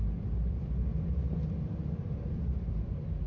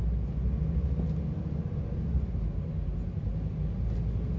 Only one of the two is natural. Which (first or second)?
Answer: second